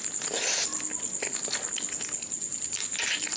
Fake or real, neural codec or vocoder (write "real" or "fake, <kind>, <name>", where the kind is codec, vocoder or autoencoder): real